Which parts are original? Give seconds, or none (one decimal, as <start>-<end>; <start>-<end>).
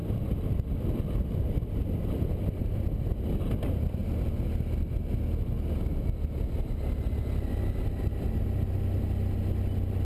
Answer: 2.6-10.0